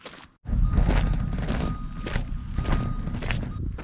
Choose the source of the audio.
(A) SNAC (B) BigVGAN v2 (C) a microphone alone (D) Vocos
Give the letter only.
C